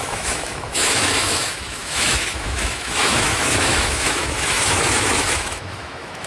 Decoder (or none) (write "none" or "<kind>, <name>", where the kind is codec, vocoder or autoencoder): autoencoder, DAC-VAE